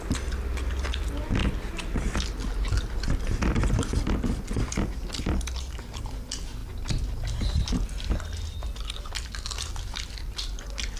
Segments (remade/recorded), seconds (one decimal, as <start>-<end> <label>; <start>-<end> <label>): 0.0-11.0 recorded